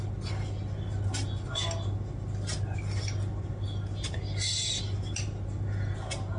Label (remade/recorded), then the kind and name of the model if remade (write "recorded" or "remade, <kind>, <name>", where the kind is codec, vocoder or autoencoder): recorded